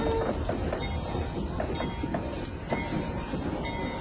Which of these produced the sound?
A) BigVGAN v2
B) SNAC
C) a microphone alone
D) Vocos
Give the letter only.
C